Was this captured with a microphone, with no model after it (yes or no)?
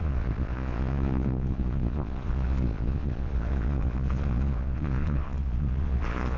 no